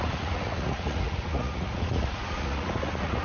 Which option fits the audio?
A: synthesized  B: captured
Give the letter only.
A